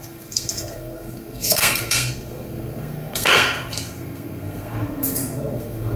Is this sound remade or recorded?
remade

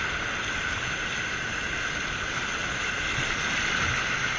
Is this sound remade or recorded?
recorded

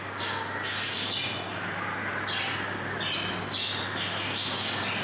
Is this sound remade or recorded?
recorded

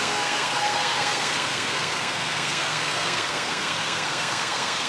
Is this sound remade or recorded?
remade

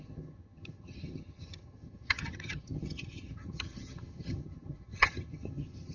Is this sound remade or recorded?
remade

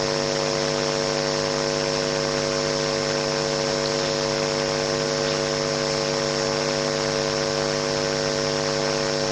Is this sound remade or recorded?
recorded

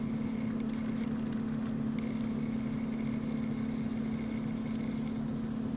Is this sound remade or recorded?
recorded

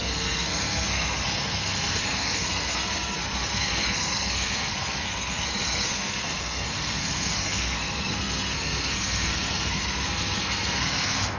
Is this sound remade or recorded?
remade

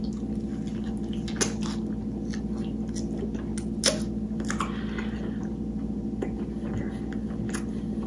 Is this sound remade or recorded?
recorded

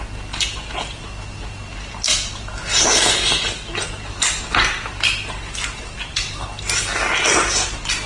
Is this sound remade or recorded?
recorded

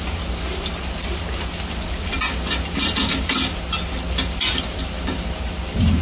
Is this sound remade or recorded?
recorded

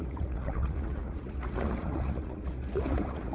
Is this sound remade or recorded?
remade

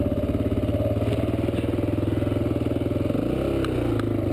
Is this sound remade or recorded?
recorded